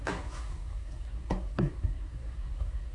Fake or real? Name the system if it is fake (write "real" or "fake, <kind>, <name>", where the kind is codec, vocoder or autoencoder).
fake, codec, SNAC